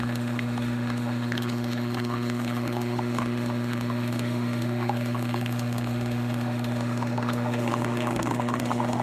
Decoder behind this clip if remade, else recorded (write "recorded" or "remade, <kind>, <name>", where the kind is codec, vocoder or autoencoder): remade, autoencoder, DAC-VAE